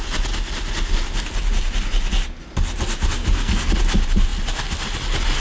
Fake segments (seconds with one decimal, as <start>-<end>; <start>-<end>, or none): 3.2-3.7